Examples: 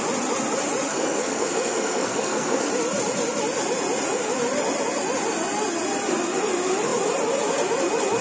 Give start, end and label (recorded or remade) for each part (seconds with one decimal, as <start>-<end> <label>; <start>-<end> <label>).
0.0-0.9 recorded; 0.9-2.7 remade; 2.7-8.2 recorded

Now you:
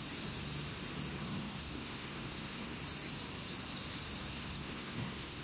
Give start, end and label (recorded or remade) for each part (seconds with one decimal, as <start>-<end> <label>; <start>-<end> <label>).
0.0-1.2 recorded; 1.2-2.7 remade; 2.7-4.3 recorded; 4.3-5.4 remade

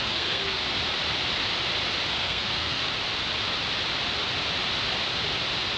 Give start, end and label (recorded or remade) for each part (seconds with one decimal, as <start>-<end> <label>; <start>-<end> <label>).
0.0-0.6 remade; 0.6-2.1 recorded; 2.1-2.8 remade; 2.8-5.8 recorded

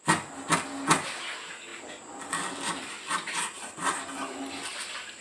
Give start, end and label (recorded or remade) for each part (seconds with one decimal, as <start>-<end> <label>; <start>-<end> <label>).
0.0-5.2 recorded

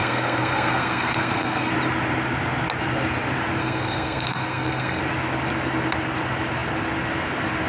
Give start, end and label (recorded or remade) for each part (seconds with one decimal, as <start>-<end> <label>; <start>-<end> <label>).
0.0-1.7 remade; 1.7-3.6 recorded; 3.6-5.0 remade; 5.0-7.7 recorded